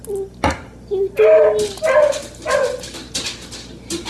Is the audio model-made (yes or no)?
no